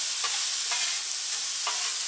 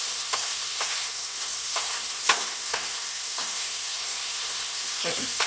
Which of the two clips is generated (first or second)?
second